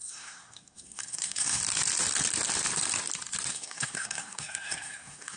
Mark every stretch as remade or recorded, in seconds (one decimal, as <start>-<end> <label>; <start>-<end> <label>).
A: 0.0-1.6 remade; 1.6-3.5 recorded; 3.5-5.4 remade

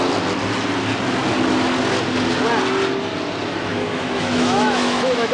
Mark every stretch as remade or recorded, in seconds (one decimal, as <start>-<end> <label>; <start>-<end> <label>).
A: 0.0-3.7 recorded; 3.7-5.3 remade

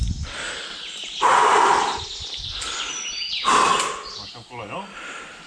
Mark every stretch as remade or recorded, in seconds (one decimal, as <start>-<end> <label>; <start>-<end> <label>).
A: 0.0-5.5 recorded